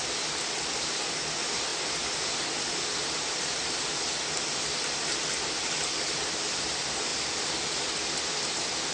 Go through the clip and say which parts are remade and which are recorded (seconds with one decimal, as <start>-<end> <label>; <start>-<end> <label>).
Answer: 0.0-8.9 recorded